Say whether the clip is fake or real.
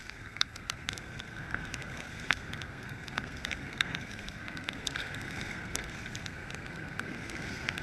fake